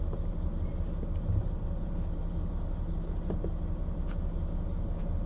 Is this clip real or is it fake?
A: real